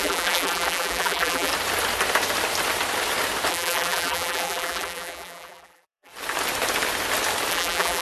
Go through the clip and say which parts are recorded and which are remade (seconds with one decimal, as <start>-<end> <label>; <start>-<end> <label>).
0.0-1.5 remade; 1.5-3.5 recorded; 3.5-6.1 remade; 6.1-7.5 recorded; 7.5-8.0 remade